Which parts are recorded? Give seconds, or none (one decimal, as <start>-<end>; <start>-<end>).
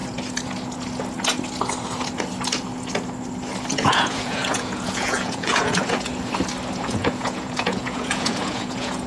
0.0-3.7; 6.1-6.8